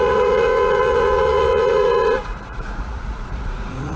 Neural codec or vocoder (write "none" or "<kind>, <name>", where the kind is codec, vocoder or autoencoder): vocoder, Vocos